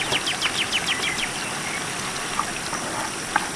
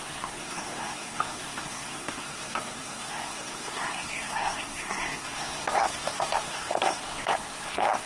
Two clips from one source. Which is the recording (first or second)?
first